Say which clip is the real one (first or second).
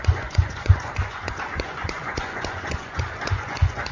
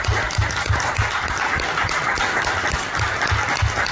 second